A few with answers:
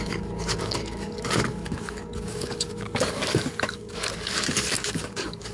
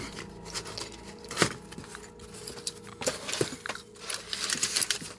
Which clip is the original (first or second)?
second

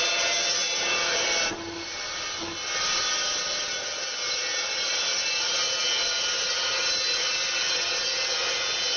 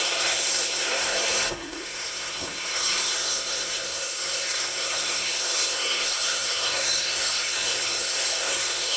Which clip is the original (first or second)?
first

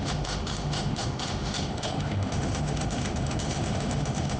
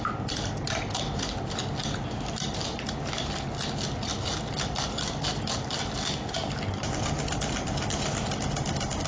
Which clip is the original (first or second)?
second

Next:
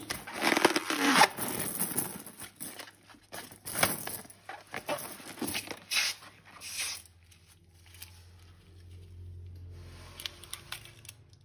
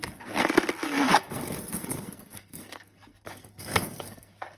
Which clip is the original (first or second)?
first